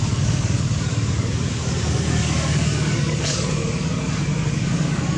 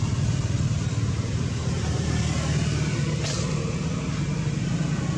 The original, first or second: second